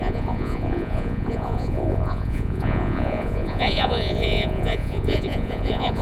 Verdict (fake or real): fake